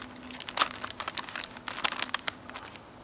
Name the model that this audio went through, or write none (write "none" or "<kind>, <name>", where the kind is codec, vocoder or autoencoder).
none